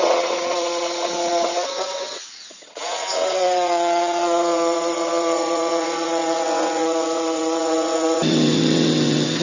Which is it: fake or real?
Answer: fake